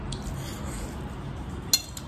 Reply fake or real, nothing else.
real